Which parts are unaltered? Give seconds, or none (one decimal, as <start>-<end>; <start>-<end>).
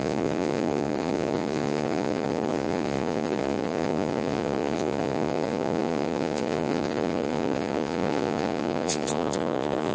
none